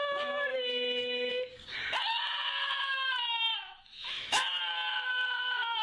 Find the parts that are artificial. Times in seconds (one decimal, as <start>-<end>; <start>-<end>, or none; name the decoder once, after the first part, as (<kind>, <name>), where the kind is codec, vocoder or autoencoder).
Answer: 0.5-1.3 (autoencoder, DAC-VAE); 3.5-4.6